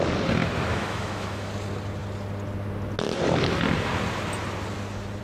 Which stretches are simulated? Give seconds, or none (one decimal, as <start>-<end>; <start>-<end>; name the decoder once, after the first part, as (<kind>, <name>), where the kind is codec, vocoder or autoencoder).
0.7-1.5 (autoencoder, DAC-VAE)